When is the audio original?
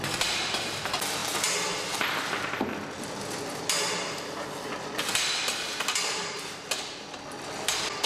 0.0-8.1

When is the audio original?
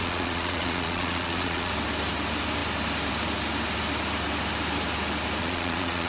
1.7-5.4